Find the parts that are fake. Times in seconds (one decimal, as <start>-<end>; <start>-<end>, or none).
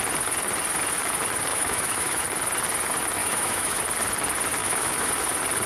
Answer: 1.5-2.2; 3.2-3.8; 4.6-5.1